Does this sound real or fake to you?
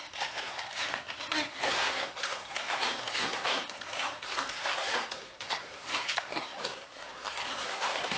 fake